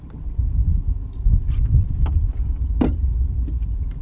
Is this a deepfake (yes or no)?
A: no